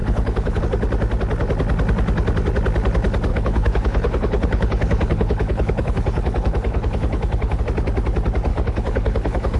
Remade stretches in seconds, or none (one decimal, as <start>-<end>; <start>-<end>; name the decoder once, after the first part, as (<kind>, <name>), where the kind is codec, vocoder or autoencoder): 0.0-0.6 (codec, HILCodec); 3.3-7.6; 8.5-9.6